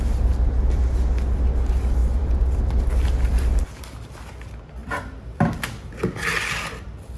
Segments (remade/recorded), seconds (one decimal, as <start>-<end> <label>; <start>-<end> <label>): 0.0-2.0 recorded; 2.0-2.7 remade; 2.7-4.8 recorded; 4.8-5.6 remade; 5.6-7.2 recorded